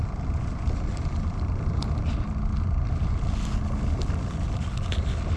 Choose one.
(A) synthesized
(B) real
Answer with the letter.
B